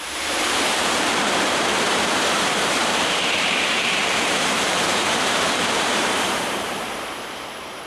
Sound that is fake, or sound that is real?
fake